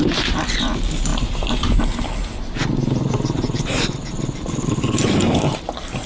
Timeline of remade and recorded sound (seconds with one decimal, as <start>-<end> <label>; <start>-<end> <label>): 0.0-6.1 recorded